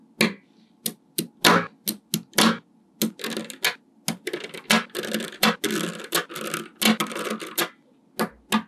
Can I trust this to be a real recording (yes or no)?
yes